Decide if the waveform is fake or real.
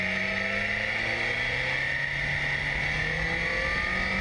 real